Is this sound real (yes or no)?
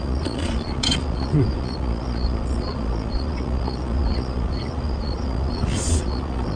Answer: no